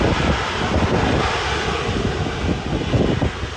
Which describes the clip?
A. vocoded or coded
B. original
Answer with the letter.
B